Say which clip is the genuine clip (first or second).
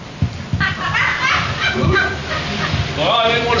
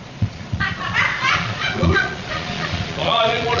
first